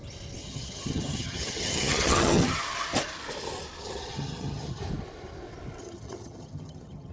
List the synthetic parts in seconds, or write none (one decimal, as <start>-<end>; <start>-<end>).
0.4-2.6; 3.8-4.8; 5.8-7.1